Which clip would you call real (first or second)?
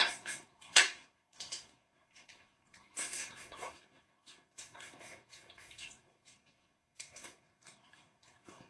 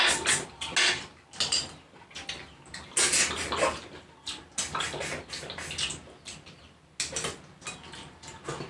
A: second